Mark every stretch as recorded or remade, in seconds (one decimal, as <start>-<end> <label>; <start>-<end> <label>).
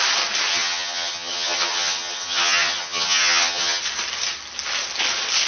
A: 0.0-0.5 recorded; 0.5-3.8 remade; 3.8-5.5 recorded